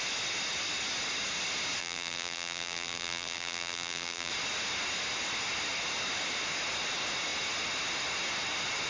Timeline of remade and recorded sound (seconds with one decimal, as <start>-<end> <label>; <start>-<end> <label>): 0.0-1.8 recorded; 1.8-4.3 remade; 4.3-8.9 recorded